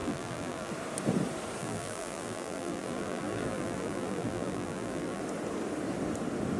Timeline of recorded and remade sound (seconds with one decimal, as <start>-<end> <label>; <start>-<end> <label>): 0.0-0.7 remade; 0.7-1.6 recorded; 1.6-5.2 remade; 5.2-6.6 recorded